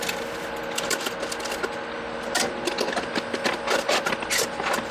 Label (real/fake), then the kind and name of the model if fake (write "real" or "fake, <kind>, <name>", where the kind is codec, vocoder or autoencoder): real